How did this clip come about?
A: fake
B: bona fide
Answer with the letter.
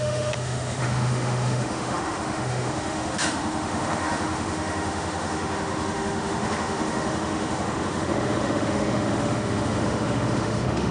A